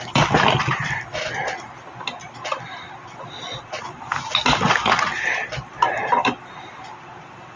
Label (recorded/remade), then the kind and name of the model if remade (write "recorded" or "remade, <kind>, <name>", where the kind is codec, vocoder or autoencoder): recorded